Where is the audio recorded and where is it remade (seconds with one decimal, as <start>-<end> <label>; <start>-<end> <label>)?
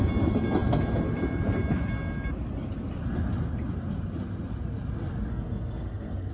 0.0-5.3 recorded; 5.3-6.3 remade